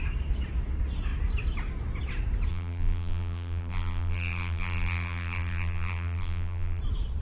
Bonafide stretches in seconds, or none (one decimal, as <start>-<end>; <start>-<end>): 0.0-2.5; 6.8-7.2